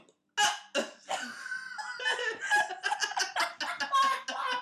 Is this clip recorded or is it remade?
recorded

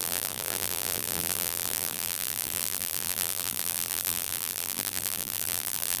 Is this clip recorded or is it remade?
remade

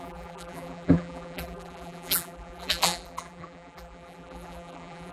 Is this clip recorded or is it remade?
remade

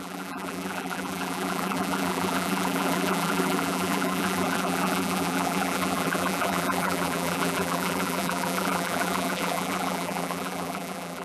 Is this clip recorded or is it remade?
remade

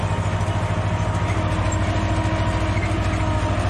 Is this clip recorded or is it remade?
recorded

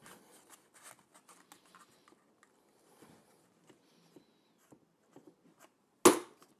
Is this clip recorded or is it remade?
recorded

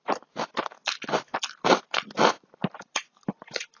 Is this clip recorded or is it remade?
recorded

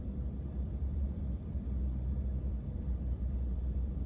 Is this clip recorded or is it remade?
remade